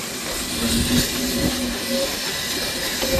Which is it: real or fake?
real